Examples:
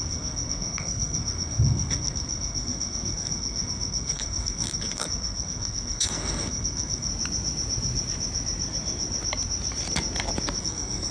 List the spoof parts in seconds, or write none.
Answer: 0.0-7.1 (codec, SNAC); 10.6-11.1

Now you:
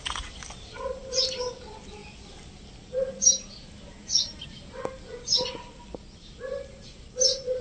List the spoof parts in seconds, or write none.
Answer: none